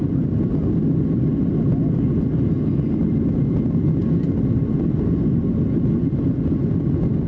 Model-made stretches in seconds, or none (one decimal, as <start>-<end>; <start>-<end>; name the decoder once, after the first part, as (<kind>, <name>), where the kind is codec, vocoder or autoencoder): none